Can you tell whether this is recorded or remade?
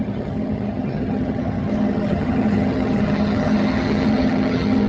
remade